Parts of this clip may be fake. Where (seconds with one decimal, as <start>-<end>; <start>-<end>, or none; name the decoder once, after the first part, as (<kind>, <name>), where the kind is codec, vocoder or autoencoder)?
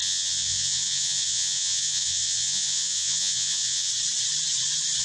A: 0.0-3.9 (vocoder, Vocos)